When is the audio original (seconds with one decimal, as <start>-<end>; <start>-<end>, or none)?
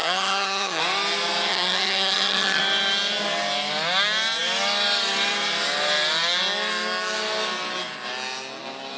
0.8-1.5; 2.6-9.0